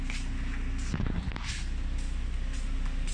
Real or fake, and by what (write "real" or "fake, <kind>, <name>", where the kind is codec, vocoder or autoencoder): real